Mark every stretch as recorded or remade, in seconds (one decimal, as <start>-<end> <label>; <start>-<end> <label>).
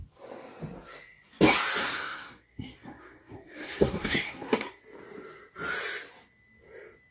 0.0-1.8 recorded; 1.8-4.8 remade; 4.8-7.1 recorded